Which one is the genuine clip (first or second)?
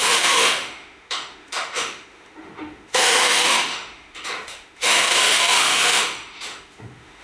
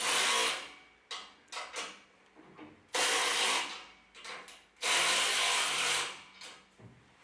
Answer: second